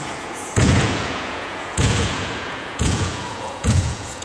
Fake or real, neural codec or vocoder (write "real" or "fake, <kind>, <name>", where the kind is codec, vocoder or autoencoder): fake, vocoder, Vocos